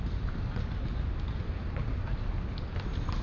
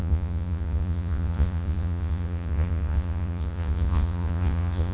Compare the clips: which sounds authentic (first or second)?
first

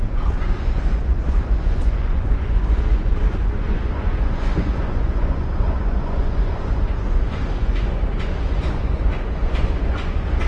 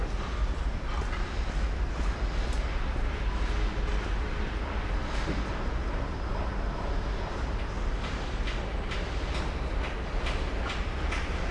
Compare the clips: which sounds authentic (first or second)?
second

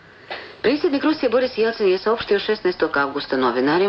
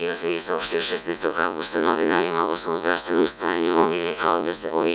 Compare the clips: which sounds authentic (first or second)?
first